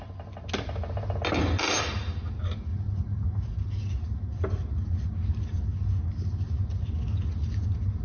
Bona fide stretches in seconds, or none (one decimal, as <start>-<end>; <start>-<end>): 0.0-2.7; 3.6-8.0